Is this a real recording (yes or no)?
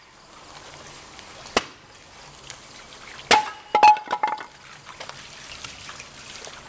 yes